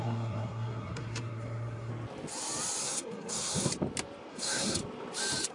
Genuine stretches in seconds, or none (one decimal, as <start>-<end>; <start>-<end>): 1.9-2.8; 3.7-4.3; 4.8-5.5